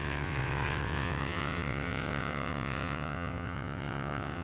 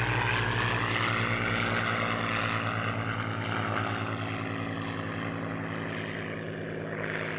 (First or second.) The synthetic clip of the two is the first